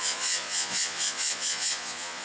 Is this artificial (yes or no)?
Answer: yes